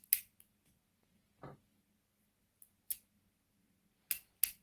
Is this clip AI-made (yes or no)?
no